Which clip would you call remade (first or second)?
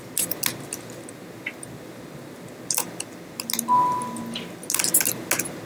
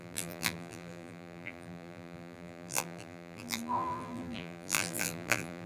second